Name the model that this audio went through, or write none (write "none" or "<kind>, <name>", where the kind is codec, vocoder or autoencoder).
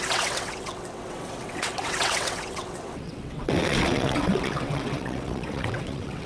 vocoder, WaveNeXt